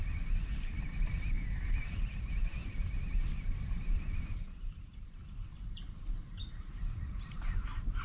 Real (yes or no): yes